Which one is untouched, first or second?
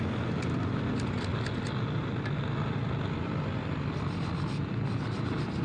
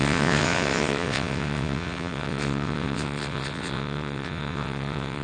first